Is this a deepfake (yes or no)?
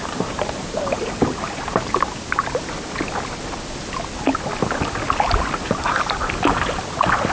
no